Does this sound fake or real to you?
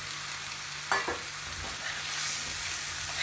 real